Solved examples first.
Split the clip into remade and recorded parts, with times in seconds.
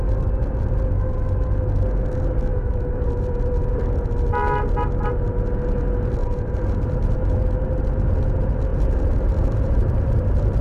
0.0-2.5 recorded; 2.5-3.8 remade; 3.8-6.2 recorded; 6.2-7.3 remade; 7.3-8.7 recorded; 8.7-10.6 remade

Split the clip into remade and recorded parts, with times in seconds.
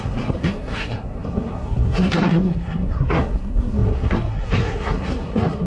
0.0-5.7 remade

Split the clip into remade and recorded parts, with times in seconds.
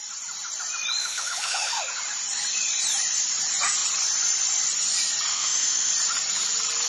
0.0-1.0 recorded; 1.0-1.9 remade; 1.9-5.3 recorded; 5.3-5.9 remade; 5.9-6.9 recorded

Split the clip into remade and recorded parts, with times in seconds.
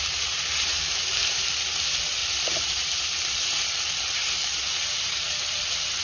0.0-6.0 recorded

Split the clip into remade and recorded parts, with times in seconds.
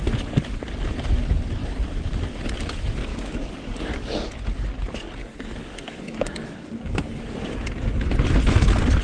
0.0-3.1 recorded; 3.1-4.3 remade; 4.3-5.2 recorded; 5.2-7.2 remade; 7.2-9.0 recorded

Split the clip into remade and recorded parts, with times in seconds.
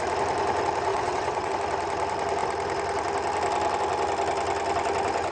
0.0-0.9 recorded; 0.9-1.5 remade; 1.5-5.3 recorded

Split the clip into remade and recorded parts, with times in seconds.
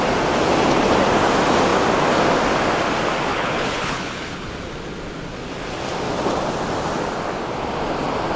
0.0-3.3 recorded; 3.3-4.5 remade; 4.5-8.4 recorded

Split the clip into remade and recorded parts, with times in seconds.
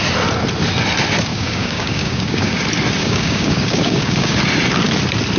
0.0-1.3 recorded; 1.3-2.6 remade; 2.6-3.0 recorded; 3.0-4.4 remade; 4.4-5.4 recorded